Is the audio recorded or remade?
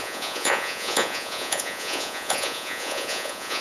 remade